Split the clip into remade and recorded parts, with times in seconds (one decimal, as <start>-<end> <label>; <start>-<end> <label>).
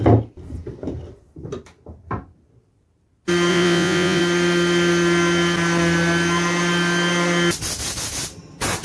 0.0-3.5 recorded; 3.5-4.2 remade; 4.2-8.8 recorded